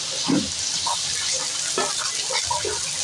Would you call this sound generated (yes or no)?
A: no